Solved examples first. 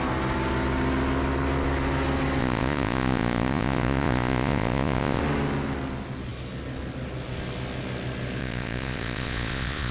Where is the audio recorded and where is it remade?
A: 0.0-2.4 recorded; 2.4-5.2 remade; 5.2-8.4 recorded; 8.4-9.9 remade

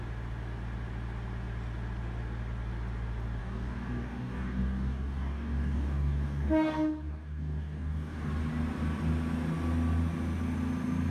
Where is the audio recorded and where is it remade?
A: 0.0-3.4 recorded; 3.4-8.3 remade; 8.3-11.1 recorded

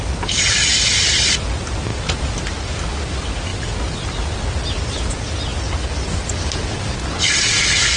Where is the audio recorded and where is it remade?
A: 0.0-8.0 recorded

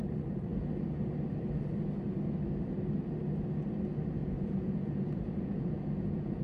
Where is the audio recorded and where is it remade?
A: 0.0-4.2 recorded; 4.2-6.4 remade

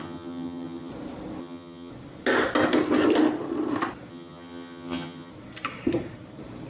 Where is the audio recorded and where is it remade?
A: 0.0-0.9 remade; 0.9-1.4 recorded; 1.4-1.9 remade; 1.9-4.1 recorded; 4.1-5.3 remade; 5.3-6.7 recorded

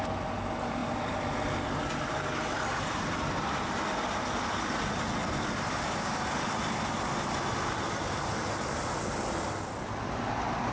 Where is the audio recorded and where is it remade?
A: 0.0-10.7 recorded